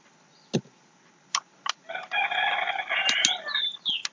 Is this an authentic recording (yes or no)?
yes